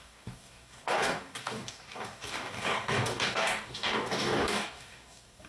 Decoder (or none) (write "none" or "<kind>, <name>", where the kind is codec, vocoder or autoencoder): codec, DAC